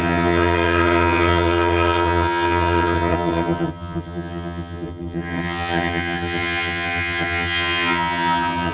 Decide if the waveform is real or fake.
fake